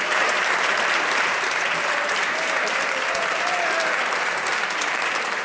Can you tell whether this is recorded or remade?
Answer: remade